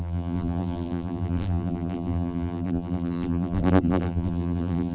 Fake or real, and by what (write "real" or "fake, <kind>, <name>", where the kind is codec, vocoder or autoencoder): fake, vocoder, BigVGAN v2